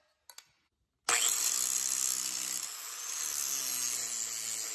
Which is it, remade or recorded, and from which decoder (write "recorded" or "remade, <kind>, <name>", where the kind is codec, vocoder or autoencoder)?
recorded